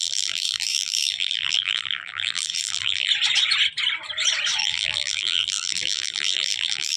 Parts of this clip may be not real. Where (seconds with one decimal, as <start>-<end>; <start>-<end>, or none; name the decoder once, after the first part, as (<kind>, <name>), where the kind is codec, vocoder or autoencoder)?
0.0-3.1 (vocoder, BigVGAN v2); 4.6-7.0

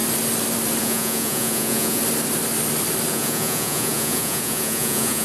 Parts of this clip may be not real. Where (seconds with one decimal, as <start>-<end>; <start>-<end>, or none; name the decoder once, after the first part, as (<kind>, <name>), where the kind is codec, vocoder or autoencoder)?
0.8-2.0 (vocoder, Vocos); 3.1-5.2